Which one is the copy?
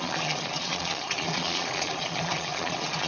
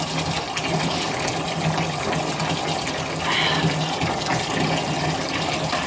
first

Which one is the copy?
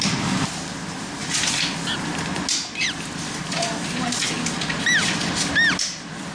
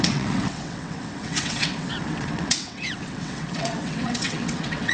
second